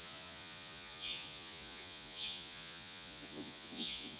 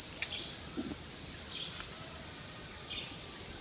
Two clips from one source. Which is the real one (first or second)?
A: second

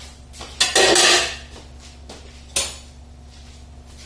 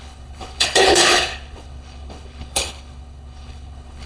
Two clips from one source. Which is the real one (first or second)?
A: first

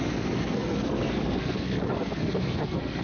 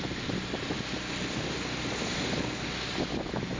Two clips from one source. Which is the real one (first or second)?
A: second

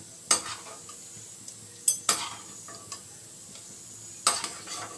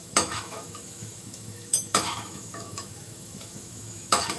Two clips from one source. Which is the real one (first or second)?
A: first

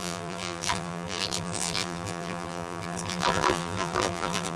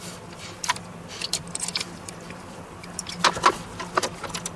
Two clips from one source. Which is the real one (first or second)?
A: second